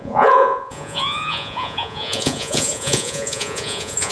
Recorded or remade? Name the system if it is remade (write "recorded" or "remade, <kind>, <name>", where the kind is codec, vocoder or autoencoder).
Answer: remade, vocoder, Vocos